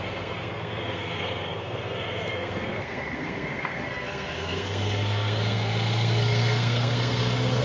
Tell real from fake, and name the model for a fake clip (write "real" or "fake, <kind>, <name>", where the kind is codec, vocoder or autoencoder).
fake, codec, SNAC